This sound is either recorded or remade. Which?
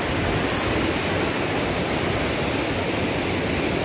recorded